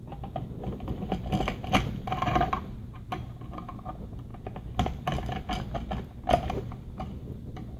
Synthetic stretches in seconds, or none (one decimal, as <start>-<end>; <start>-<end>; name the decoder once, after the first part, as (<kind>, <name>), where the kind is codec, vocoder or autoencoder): none